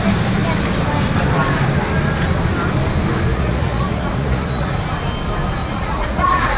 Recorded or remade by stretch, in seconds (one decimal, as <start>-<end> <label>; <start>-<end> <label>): 0.0-3.3 recorded; 3.3-4.8 remade; 4.8-5.6 recorded; 5.6-6.6 remade